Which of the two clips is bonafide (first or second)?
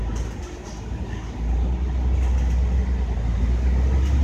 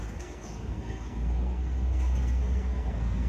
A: first